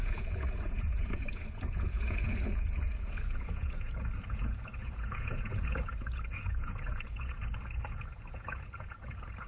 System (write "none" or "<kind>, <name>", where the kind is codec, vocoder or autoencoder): vocoder, Vocos